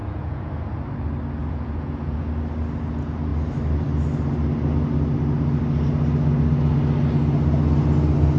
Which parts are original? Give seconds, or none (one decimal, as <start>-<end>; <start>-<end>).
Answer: 0.5-1.4; 2.3-8.4